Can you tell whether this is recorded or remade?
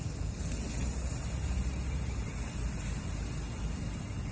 recorded